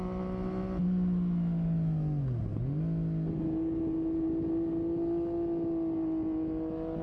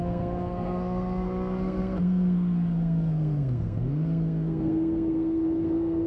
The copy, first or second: second